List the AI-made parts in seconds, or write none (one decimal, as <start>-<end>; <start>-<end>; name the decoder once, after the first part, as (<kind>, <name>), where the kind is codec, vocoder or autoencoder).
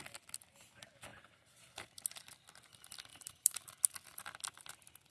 1.1-2.0 (vocoder, BigVGAN v2); 3.1-3.7